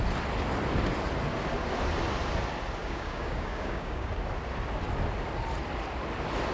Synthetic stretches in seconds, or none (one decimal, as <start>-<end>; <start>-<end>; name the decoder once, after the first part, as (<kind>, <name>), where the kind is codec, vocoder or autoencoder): 2.8-4.1 (codec, DAC)